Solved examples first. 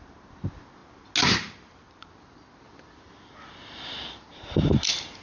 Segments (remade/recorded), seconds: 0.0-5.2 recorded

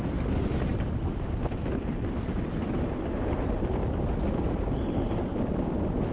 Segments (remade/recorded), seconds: 0.0-6.1 recorded

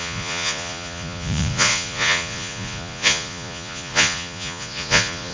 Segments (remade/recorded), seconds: 0.0-5.3 remade

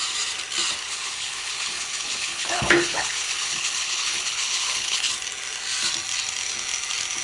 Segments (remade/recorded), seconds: 0.0-0.8 recorded; 0.8-5.1 remade; 5.1-7.2 recorded

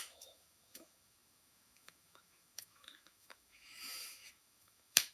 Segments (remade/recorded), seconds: 0.0-5.1 remade

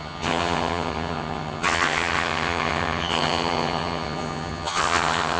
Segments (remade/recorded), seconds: 0.0-5.4 remade